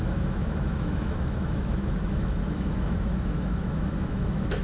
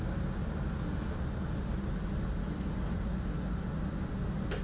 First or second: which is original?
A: second